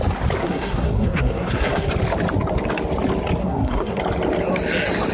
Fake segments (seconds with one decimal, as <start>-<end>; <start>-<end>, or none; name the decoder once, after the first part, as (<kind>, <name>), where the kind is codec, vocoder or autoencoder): 0.4-1.9 (codec, SNAC); 3.4-4.0